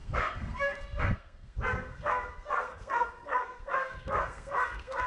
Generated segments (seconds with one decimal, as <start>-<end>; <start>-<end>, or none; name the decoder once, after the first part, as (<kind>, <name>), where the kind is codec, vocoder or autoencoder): 0.0-5.1 (codec, SNAC)